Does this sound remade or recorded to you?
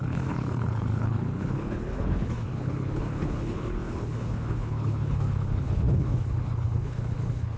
remade